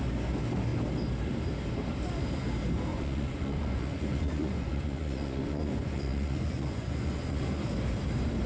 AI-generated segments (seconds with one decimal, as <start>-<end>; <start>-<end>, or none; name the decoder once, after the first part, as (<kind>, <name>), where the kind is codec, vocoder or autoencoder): 2.9-7.6 (vocoder, Vocos)